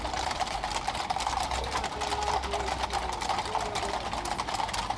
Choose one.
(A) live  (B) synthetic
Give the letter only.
A